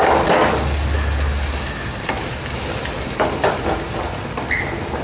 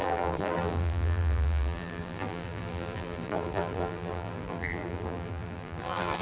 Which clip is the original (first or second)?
first